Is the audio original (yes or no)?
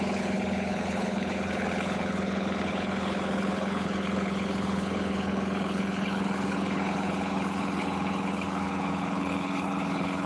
no